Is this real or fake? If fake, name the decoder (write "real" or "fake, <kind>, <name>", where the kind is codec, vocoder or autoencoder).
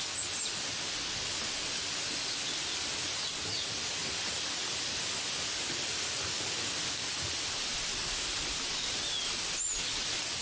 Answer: real